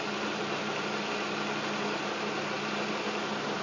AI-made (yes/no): no